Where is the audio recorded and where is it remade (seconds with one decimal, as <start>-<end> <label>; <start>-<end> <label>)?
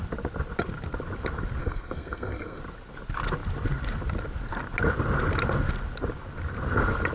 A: 0.0-1.6 recorded; 1.6-2.6 remade; 2.6-7.1 recorded